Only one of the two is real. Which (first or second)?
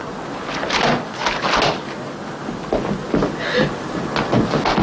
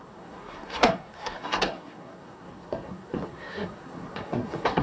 first